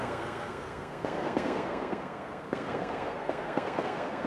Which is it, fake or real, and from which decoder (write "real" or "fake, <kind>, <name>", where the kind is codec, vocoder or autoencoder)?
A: fake, codec, SNAC